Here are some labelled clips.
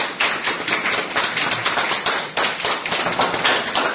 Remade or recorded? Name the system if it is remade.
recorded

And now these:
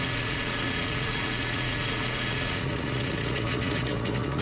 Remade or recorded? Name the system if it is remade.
remade, vocoder, Vocos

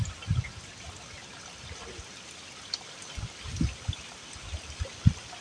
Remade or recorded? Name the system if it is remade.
recorded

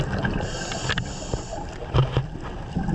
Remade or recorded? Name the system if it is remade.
recorded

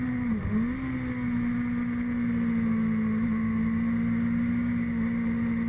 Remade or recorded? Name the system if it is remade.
recorded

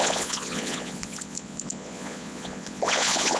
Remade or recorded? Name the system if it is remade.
remade, vocoder, Vocos